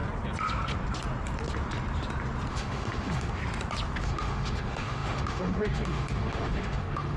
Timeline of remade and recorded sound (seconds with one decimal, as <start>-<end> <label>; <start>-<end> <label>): 0.0-2.5 recorded; 2.5-3.4 remade; 3.4-4.0 recorded; 4.0-7.2 remade